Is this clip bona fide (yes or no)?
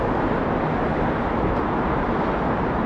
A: yes